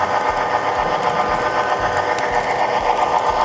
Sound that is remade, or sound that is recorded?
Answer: recorded